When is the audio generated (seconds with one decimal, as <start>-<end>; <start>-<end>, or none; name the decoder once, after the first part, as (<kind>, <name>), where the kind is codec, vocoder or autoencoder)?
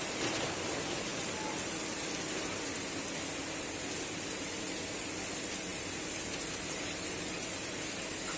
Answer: none